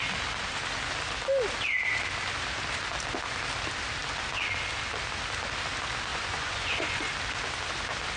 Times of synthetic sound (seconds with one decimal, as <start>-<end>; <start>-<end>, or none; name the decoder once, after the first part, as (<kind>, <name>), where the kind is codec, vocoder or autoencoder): 6.1-7.1 (vocoder, Vocos)